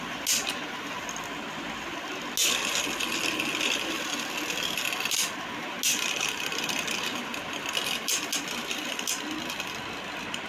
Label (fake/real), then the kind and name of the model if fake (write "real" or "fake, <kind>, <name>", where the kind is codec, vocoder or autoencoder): real